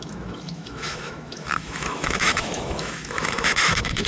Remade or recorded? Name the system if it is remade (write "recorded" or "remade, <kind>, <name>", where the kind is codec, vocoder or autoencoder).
remade, autoencoder, DAC-VAE